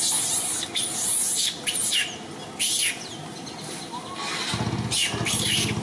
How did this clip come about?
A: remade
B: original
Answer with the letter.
B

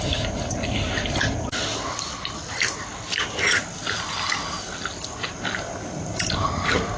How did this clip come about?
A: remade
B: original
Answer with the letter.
B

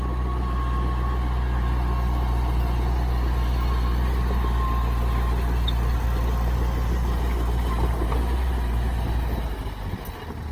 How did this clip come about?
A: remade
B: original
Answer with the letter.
B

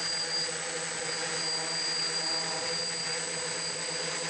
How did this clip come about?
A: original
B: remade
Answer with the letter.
A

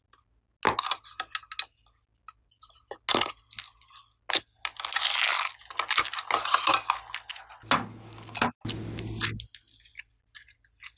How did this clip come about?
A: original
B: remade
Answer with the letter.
A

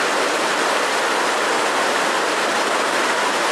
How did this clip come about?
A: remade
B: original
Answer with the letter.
B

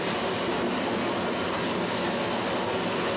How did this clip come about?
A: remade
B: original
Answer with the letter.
B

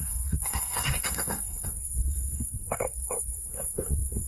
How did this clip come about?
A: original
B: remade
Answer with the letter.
B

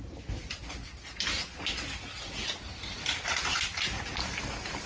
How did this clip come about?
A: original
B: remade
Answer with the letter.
A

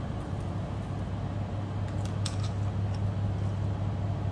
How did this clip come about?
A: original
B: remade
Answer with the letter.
A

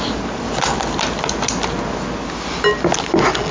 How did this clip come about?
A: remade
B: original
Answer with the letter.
B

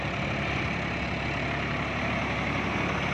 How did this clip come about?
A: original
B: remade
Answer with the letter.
A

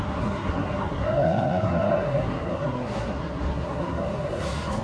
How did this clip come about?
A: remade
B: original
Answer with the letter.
A